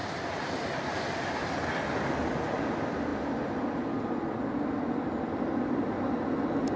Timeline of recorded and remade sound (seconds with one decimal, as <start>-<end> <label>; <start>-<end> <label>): 0.0-6.8 recorded